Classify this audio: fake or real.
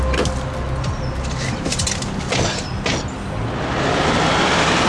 real